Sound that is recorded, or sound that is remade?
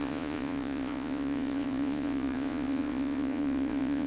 remade